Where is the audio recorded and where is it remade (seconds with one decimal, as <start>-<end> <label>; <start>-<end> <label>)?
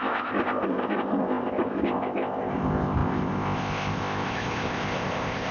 0.0-5.5 remade